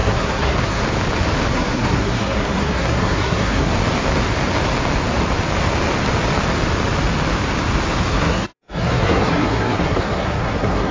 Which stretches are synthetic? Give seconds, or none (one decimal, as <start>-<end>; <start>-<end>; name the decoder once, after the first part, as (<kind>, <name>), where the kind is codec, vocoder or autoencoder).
0.0-0.8 (codec, SNAC); 1.5-3.7; 8.1-10.9